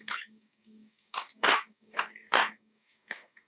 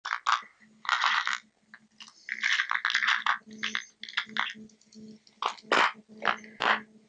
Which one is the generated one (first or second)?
first